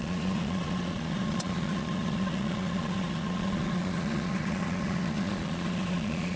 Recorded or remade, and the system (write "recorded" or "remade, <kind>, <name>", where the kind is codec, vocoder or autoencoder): remade, vocoder, Vocos